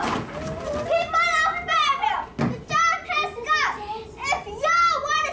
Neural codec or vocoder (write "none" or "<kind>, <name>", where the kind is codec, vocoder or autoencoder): none